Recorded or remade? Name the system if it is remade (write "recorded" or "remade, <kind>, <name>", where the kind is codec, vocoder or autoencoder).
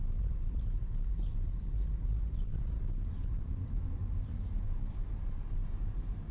remade, vocoder, BigVGAN v2